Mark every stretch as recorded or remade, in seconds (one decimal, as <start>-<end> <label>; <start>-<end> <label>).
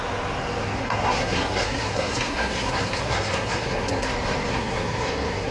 0.0-0.8 recorded; 0.8-4.1 remade; 4.1-4.5 recorded; 4.5-5.5 remade